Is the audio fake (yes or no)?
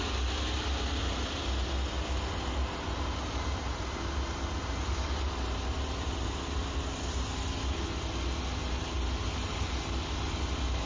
no